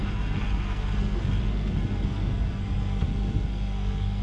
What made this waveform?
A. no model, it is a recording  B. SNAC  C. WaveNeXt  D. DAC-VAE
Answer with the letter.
B